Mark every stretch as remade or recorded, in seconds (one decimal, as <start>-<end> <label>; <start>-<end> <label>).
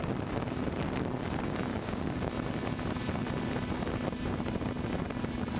0.0-1.7 recorded; 1.7-2.3 remade; 2.3-5.6 recorded